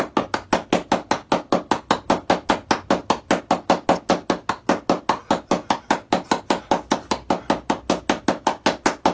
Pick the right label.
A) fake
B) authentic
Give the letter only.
B